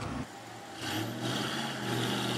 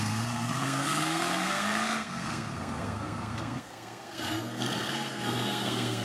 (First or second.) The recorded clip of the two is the first